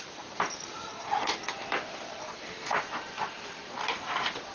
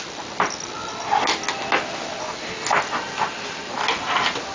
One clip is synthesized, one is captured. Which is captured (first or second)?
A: second